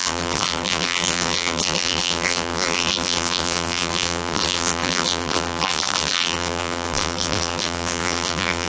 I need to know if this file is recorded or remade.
remade